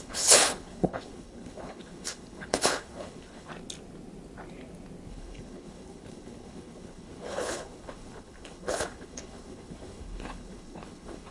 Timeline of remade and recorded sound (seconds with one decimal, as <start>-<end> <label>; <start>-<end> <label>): 0.0-3.5 remade; 3.5-5.1 recorded; 5.1-11.3 remade